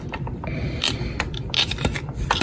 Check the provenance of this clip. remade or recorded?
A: recorded